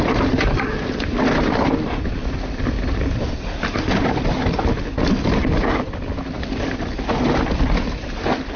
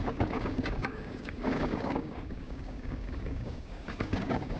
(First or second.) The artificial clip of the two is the second